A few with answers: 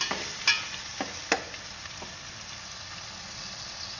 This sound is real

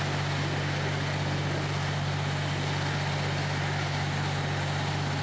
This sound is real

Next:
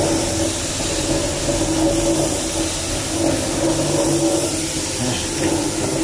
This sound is real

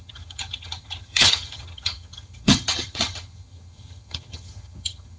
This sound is fake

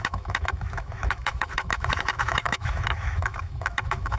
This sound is fake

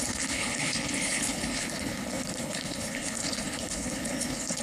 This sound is fake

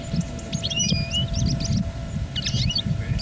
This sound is real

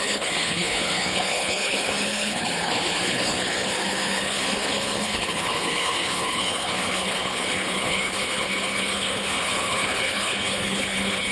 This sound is fake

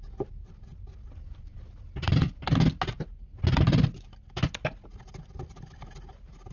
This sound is real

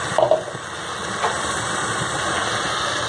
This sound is real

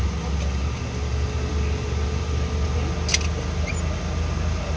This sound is real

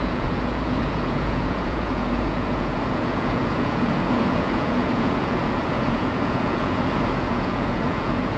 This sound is fake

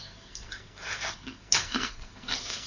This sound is fake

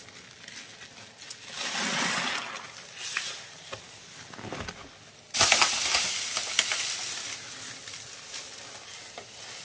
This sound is real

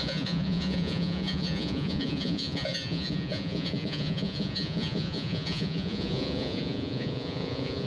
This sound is fake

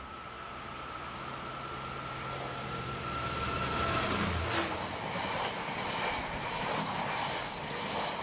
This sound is real